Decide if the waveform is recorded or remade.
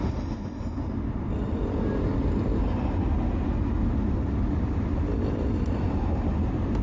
recorded